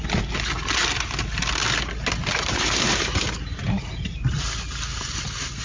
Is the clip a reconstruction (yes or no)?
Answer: no